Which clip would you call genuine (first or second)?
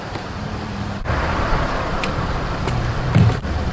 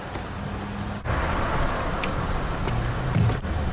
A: second